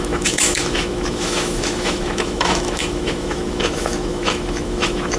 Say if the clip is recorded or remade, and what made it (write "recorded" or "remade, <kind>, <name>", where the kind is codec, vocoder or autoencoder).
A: remade, autoencoder, DAC-VAE